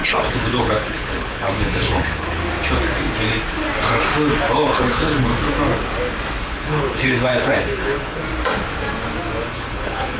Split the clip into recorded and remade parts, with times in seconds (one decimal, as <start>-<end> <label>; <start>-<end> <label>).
0.0-2.4 remade; 2.4-4.5 recorded; 4.5-5.3 remade; 5.3-6.4 recorded; 6.4-8.2 remade; 8.2-9.4 recorded; 9.4-10.2 remade